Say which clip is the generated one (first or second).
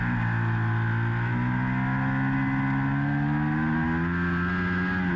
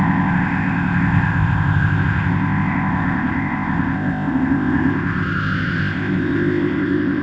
second